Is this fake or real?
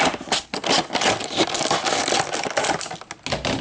real